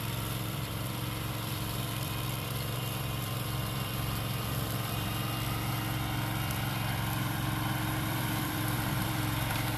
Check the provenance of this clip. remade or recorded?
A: remade